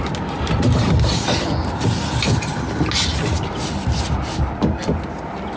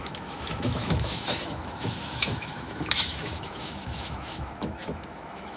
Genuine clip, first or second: first